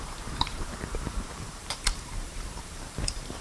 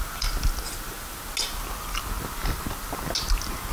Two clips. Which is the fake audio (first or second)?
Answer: first